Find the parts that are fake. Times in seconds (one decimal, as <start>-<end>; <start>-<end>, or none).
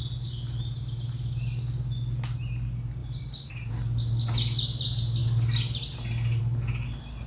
none